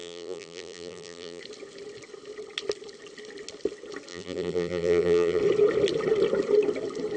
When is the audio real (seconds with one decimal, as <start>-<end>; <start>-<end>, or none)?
1.4-4.1; 5.4-7.2